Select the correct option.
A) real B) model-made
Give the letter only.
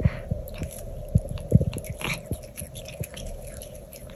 A